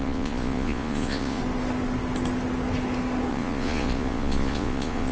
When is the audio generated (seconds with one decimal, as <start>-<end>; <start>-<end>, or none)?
0.0-1.4; 3.3-5.1